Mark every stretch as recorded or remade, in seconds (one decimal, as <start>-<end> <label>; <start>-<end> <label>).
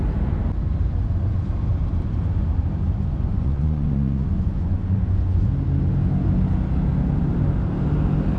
0.0-3.3 recorded; 3.3-5.5 remade; 5.5-8.4 recorded